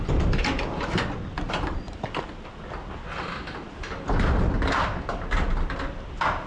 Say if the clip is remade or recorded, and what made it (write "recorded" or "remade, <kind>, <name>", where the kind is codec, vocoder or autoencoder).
recorded